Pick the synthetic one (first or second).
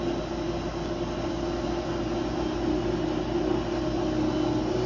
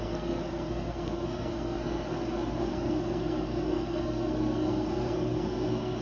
second